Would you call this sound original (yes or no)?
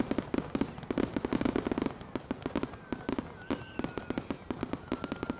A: yes